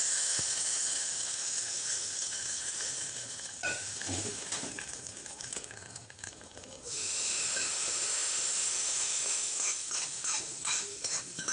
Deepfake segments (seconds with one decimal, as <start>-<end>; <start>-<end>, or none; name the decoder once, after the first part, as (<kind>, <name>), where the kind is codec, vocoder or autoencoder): 0.0-11.5 (autoencoder, DAC-VAE)